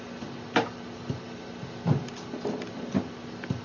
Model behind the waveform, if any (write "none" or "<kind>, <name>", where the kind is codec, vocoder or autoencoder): none